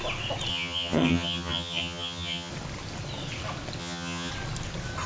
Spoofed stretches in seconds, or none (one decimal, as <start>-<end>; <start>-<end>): 0.5-2.5; 3.8-4.3